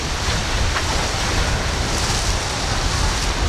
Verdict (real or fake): real